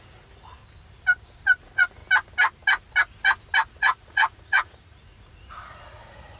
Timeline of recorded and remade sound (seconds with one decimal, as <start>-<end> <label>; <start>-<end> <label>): 0.0-0.6 remade; 0.6-1.6 recorded; 1.6-2.0 remade; 2.0-3.7 recorded; 3.7-6.4 remade